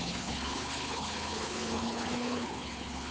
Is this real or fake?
fake